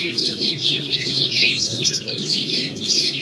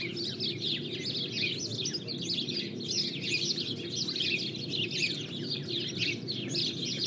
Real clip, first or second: second